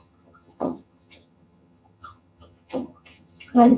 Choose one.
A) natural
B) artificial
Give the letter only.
B